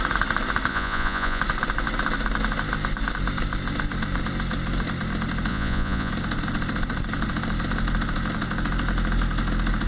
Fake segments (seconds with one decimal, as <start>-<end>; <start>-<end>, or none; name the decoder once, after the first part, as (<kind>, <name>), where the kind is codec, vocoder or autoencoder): 0.7-1.4 (vocoder, Vocos); 5.5-6.1